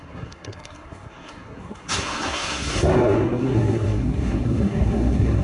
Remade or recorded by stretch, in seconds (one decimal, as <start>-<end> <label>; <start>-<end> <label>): 0.0-5.4 remade

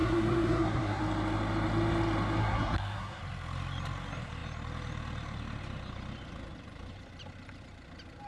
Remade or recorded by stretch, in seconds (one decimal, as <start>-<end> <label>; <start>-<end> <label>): 0.0-1.0 remade; 1.0-2.4 recorded; 2.4-3.2 remade; 3.2-8.3 recorded